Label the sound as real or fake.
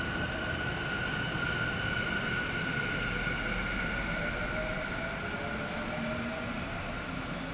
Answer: real